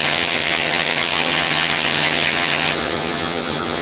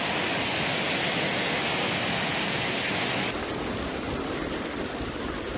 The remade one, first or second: first